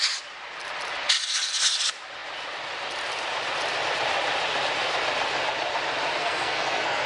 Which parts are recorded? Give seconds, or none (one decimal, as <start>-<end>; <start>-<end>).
0.0-6.2